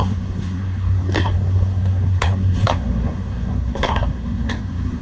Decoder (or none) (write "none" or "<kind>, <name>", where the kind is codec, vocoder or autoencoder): codec, SNAC